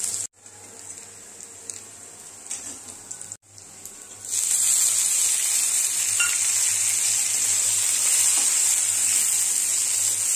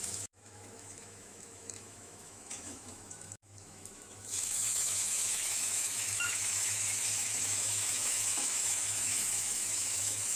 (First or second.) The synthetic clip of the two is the second